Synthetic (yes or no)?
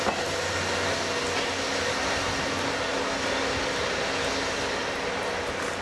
no